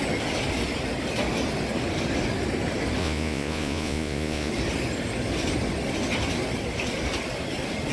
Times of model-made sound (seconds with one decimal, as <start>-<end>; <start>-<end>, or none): 3.0-4.5